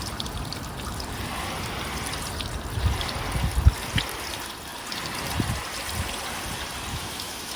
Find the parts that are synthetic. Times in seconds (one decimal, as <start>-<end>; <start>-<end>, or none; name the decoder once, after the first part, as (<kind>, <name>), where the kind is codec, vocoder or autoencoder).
6.9-7.6 (autoencoder, DAC-VAE)